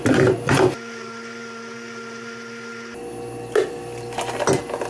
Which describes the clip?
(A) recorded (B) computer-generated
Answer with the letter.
A